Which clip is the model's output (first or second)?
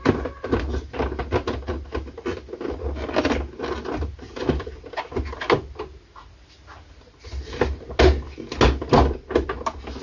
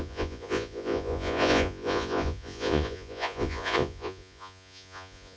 second